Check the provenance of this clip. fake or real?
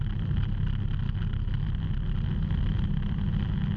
real